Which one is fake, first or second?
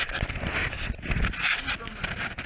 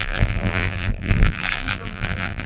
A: second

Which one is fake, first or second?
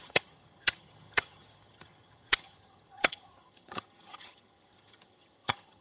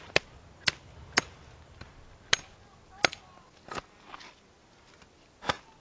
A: first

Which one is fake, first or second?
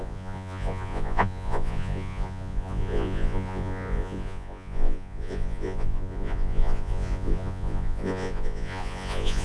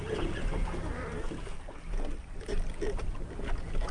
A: first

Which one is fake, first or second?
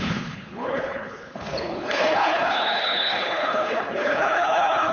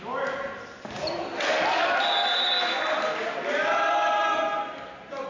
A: first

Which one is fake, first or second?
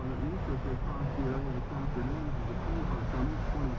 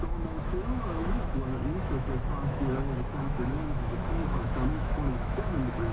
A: second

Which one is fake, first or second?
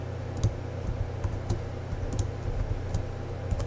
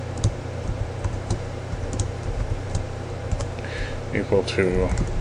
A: second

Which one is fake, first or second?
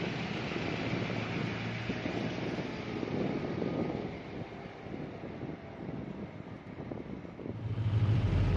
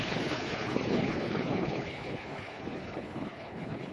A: second